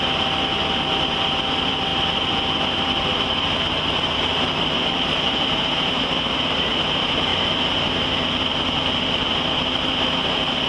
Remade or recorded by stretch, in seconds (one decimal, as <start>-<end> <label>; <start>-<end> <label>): 0.0-1.9 recorded; 1.9-6.7 remade; 6.7-7.3 recorded; 7.3-8.1 remade; 8.1-10.7 recorded